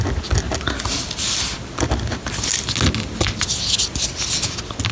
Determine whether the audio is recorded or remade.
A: recorded